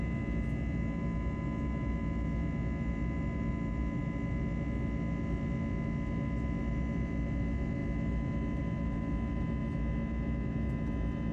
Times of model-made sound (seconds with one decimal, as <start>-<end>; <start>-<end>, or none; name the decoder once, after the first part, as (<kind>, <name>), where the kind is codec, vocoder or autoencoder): none